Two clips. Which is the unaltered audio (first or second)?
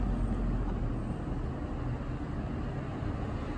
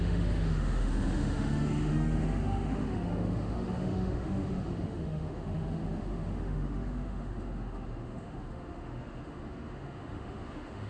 first